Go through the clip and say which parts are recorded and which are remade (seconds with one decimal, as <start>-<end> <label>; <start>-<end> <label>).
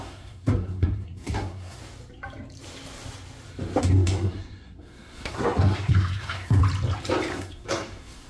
0.0-1.8 remade; 1.8-3.8 recorded; 3.8-6.6 remade; 6.6-7.3 recorded; 7.3-8.3 remade